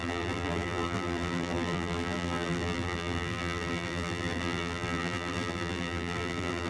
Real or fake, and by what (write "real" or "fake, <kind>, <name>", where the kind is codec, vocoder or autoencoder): fake, vocoder, BigVGAN v2